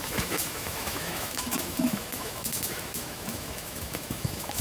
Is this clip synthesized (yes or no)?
yes